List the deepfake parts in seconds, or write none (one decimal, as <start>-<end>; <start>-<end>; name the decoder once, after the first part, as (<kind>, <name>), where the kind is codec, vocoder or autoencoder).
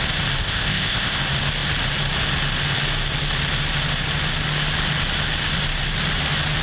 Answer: 0.4-1.2 (codec, ZipCodec)